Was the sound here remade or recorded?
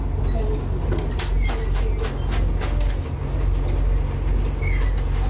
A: recorded